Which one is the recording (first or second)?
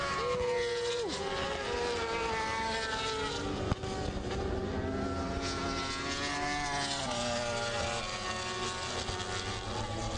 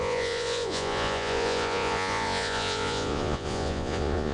first